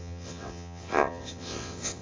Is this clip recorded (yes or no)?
no